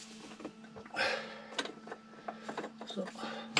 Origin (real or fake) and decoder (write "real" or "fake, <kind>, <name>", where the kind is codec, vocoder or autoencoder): real